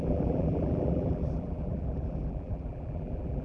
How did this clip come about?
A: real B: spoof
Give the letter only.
B